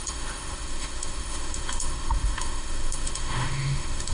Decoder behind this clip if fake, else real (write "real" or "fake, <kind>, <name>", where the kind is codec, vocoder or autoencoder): fake, autoencoder, DAC-VAE